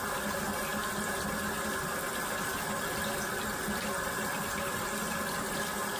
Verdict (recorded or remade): recorded